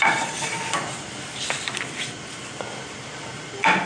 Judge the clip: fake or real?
fake